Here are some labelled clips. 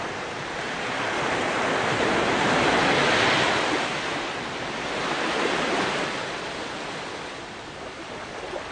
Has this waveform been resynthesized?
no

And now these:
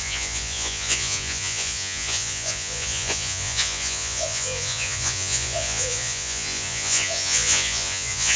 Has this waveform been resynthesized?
yes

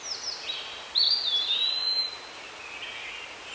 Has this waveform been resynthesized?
no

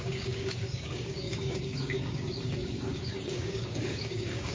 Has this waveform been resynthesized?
yes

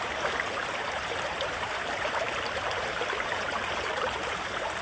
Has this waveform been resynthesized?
yes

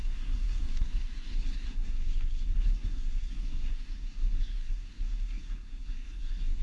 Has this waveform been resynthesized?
yes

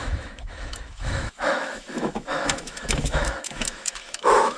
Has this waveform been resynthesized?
yes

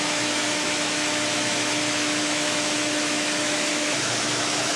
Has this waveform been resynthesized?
yes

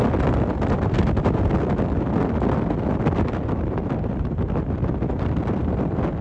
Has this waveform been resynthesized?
no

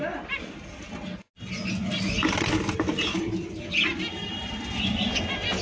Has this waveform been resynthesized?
no